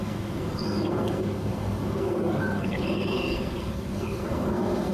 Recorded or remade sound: remade